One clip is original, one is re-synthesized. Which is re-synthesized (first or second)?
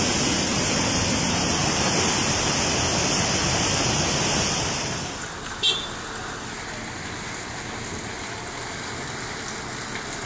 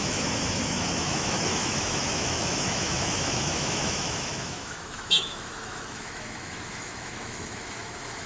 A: second